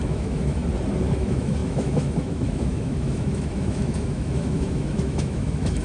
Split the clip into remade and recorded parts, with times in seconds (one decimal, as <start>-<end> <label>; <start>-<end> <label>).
0.0-0.6 remade; 0.6-1.1 recorded; 1.1-5.8 remade